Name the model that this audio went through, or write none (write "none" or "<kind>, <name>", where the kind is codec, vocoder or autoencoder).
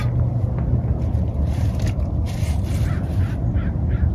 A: none